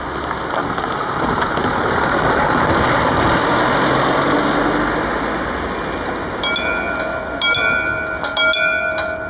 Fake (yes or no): no